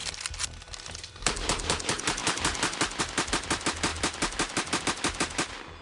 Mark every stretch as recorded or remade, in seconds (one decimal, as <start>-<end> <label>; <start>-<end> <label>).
0.0-5.8 recorded

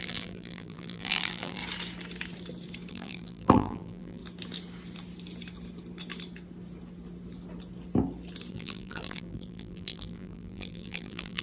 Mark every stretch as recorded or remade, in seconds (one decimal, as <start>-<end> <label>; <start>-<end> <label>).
0.0-1.6 remade; 1.6-2.9 recorded; 2.9-4.2 remade; 4.2-8.5 recorded; 8.5-11.4 remade

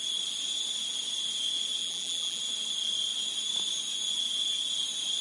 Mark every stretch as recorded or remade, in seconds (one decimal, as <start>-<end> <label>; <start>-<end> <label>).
0.0-1.8 recorded; 1.8-2.4 remade; 2.4-5.2 recorded

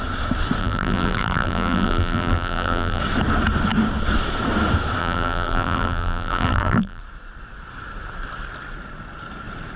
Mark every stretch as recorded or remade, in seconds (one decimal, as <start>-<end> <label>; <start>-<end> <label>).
0.0-0.6 recorded; 0.6-3.0 remade; 3.0-5.0 recorded; 5.0-7.0 remade; 7.0-9.8 recorded

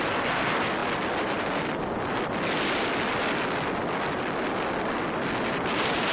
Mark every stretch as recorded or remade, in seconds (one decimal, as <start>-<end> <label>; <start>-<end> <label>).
0.0-6.1 recorded

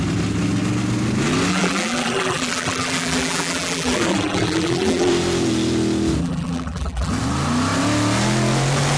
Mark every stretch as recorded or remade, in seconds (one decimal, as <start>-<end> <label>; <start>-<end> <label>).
0.0-1.5 recorded; 1.5-5.1 remade; 5.1-6.2 recorded; 6.2-7.1 remade; 7.1-9.0 recorded